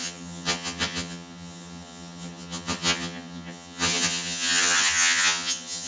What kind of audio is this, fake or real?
fake